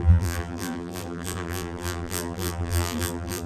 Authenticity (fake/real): fake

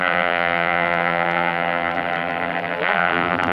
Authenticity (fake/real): fake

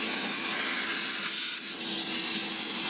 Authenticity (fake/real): real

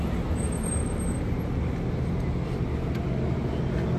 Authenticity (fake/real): real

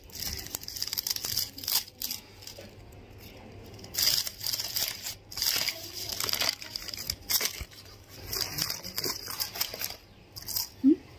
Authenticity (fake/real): real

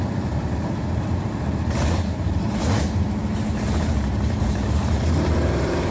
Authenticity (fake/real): fake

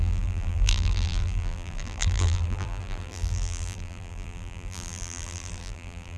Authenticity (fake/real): fake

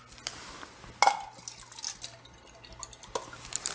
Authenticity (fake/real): real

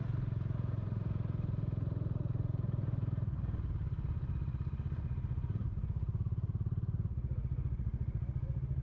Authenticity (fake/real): fake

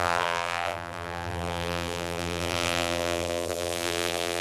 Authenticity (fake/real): fake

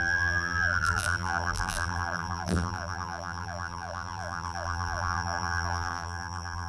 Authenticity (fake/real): fake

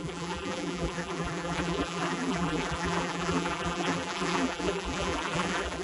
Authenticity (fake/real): fake